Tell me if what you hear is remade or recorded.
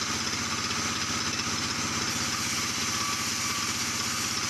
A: recorded